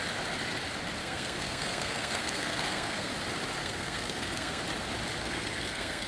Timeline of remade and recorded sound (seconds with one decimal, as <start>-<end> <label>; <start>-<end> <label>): 0.0-1.0 recorded; 1.0-3.1 remade; 3.1-3.6 recorded; 3.6-4.6 remade; 4.6-5.2 recorded; 5.2-6.1 remade